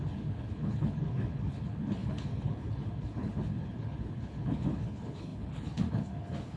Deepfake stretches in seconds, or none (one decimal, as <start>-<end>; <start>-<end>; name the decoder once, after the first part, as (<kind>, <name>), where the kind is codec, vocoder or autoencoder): 0.0-6.6 (codec, HILCodec)